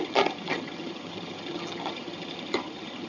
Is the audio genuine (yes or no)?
no